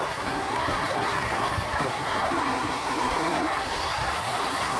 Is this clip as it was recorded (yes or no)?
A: no